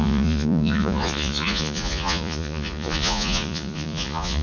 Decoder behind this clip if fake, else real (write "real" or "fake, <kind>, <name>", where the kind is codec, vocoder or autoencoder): fake, vocoder, Vocos